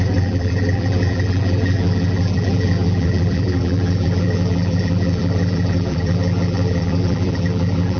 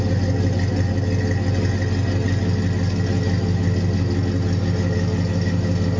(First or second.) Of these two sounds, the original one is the second